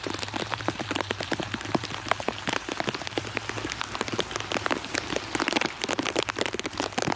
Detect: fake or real real